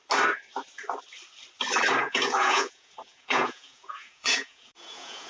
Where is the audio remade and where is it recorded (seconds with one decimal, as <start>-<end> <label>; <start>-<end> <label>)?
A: 0.0-2.0 recorded; 2.0-5.3 remade